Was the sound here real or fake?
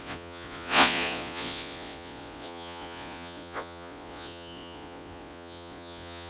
fake